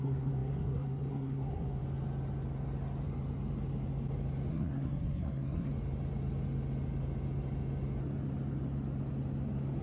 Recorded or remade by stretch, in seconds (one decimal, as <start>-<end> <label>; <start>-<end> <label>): 0.0-1.8 remade; 1.8-4.5 recorded; 4.5-5.7 remade; 5.7-9.8 recorded